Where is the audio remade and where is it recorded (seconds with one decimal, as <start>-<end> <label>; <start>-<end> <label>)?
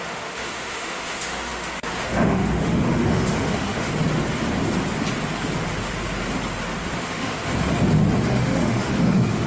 0.0-3.9 remade; 3.9-7.0 recorded; 7.0-7.5 remade; 7.5-8.2 recorded; 8.2-9.5 remade